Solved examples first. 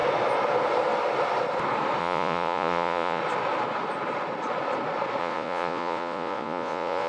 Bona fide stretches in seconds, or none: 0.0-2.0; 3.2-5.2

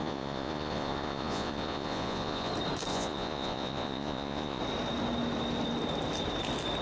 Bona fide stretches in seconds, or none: 2.5-2.9; 4.6-6.8

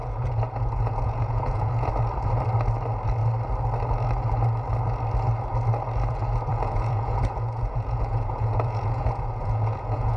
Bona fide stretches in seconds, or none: 1.9-6.5

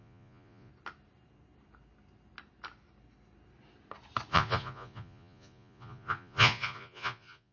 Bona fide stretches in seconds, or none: 0.7-4.3

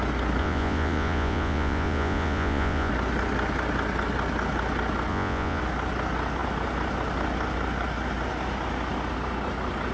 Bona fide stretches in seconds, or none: 0.0-0.4; 2.9-5.1; 5.6-9.9

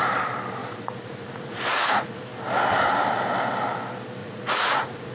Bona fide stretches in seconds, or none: 0.0-0.6; 2.2-4.2